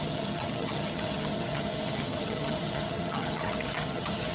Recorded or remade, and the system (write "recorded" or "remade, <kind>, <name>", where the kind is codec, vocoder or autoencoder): remade, vocoder, HiFi-GAN